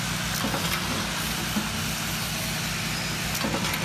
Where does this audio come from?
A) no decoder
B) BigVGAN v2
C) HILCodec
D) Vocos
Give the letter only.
A